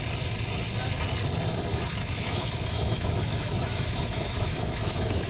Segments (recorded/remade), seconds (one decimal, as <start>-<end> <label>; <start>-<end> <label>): 0.0-1.7 recorded; 1.7-5.3 remade